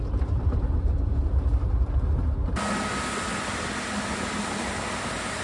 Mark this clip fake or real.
real